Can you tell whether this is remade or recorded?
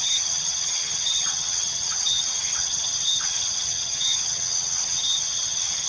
remade